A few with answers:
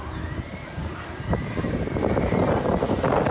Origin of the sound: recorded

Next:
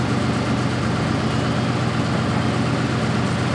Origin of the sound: recorded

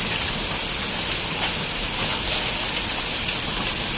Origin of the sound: recorded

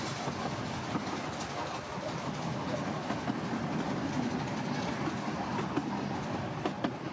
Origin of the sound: recorded